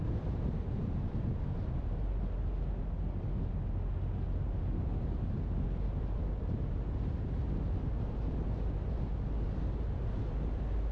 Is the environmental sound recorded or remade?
recorded